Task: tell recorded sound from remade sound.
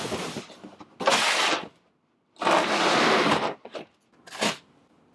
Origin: recorded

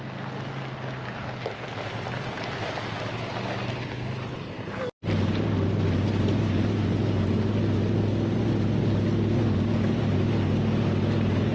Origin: recorded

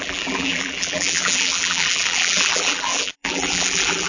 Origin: remade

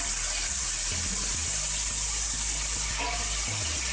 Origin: recorded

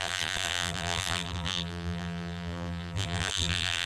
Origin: remade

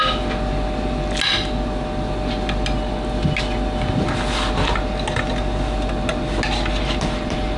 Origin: recorded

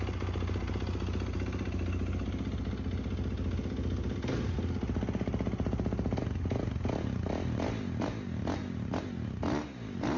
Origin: recorded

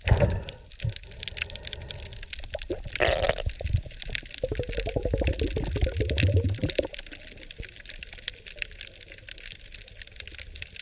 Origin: recorded